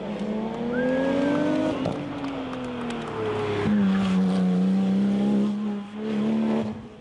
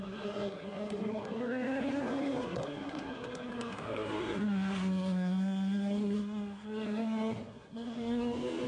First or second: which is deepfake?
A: second